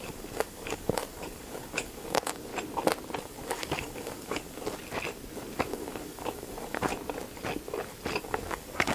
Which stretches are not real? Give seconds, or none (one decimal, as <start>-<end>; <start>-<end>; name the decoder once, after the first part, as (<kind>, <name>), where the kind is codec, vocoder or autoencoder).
0.0-2.5 (codec, DAC); 3.2-4.8; 5.5-6.9; 8.2-8.9